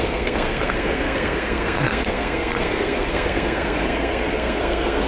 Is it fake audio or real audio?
fake